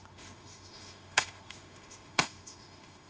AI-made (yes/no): yes